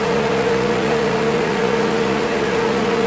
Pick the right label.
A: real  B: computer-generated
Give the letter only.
B